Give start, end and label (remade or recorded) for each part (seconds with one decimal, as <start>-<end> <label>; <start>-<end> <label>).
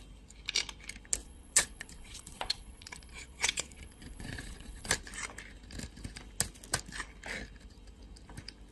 0.0-1.2 recorded; 1.2-4.9 remade; 4.9-8.7 recorded